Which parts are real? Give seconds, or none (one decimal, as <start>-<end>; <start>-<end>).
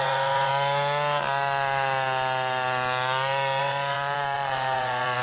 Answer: 0.5-3.6